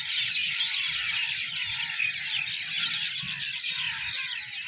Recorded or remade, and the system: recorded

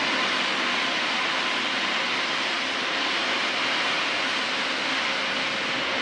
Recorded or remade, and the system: recorded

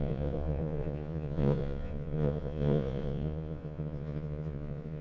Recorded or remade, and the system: remade, vocoder, Vocos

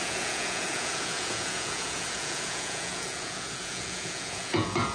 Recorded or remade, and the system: remade, vocoder, Vocos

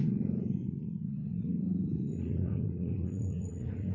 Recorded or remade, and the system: remade, vocoder, Vocos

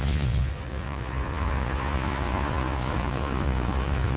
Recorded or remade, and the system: remade, vocoder, Vocos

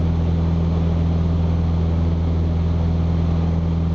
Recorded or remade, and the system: recorded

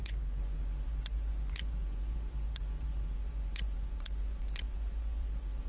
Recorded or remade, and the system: remade, vocoder, Vocos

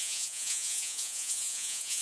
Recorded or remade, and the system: remade, vocoder, Vocos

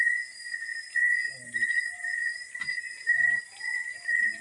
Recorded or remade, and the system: recorded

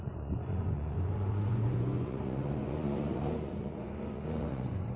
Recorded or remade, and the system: remade, vocoder, Vocos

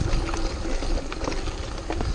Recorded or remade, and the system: recorded